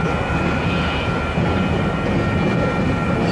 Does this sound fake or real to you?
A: real